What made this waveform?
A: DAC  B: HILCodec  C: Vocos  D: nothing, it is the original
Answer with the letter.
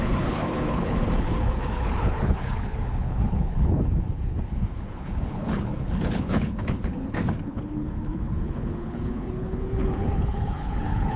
B